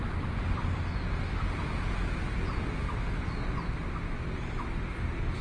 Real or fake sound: real